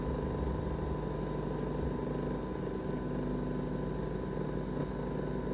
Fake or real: real